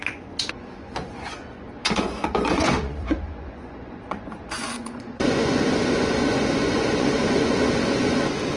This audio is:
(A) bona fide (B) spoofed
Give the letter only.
B